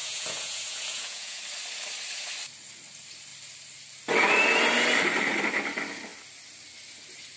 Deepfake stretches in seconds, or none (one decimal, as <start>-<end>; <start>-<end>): 0.0-1.4